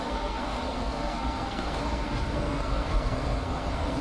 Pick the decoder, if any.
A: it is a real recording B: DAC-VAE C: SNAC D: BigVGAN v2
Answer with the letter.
C